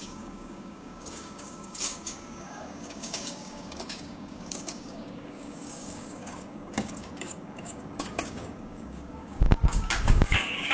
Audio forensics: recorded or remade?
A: remade